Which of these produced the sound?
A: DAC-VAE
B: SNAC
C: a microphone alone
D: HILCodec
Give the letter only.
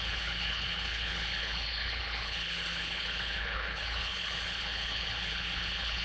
D